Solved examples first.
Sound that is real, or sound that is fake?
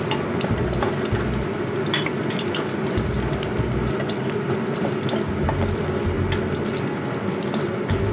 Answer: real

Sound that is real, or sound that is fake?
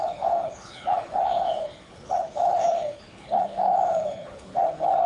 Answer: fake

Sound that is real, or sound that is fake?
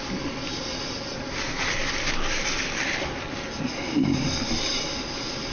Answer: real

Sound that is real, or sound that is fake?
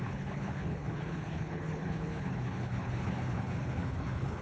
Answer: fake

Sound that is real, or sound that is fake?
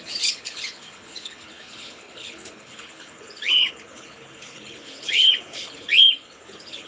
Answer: fake